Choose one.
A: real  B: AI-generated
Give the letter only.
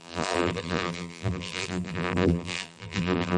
B